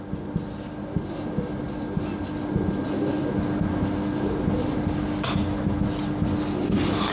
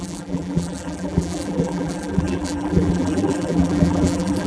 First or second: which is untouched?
first